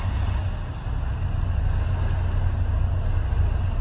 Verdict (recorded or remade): recorded